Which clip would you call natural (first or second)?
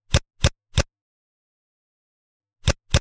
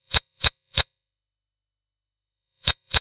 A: first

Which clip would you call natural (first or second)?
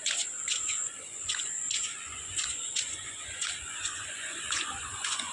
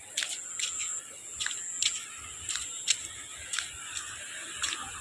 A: second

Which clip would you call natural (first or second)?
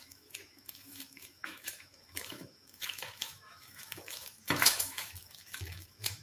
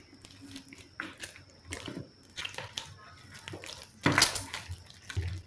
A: second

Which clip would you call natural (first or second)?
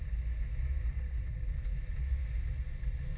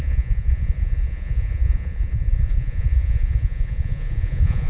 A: first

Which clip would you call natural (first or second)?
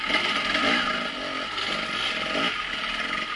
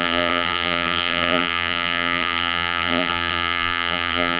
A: first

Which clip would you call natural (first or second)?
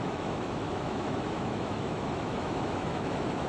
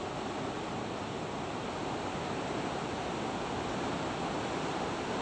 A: second